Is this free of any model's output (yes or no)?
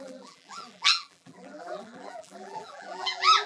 no